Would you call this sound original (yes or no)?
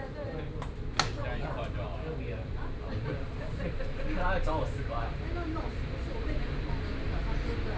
yes